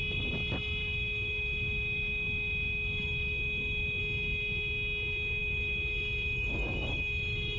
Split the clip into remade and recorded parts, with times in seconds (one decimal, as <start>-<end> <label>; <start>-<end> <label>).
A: 0.0-0.8 recorded; 0.8-4.0 remade; 4.0-5.4 recorded; 5.4-7.6 remade